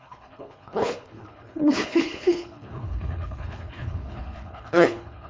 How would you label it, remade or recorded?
remade